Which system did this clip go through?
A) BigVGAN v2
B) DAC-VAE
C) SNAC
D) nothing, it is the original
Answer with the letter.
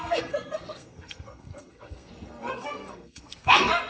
C